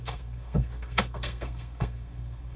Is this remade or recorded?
remade